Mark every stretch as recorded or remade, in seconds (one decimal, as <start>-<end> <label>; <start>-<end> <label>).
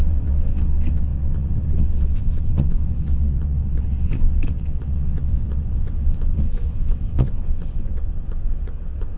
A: 0.0-9.2 remade